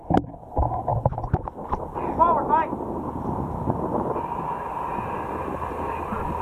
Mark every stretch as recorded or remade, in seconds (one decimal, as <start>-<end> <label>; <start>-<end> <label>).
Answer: 0.0-6.4 recorded

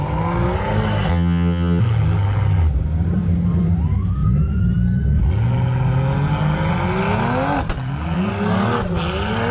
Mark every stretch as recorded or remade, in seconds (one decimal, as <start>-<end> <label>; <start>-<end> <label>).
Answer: 0.0-1.1 recorded; 1.1-1.8 remade; 1.8-9.5 recorded

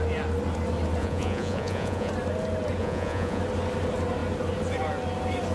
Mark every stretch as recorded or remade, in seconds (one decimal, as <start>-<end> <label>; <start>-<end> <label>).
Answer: 0.0-1.0 recorded; 1.0-2.1 remade; 2.1-2.8 recorded; 2.8-3.4 remade; 3.4-5.5 recorded

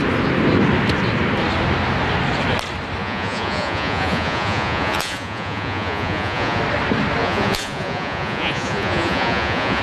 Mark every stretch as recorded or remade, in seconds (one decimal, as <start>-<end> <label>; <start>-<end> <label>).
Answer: 0.0-3.0 recorded; 3.0-6.6 remade; 6.6-7.2 recorded; 7.2-9.8 remade

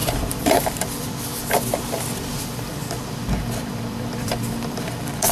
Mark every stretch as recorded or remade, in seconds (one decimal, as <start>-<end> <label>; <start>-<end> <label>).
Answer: 0.0-1.3 remade; 1.3-2.3 recorded; 2.3-5.3 remade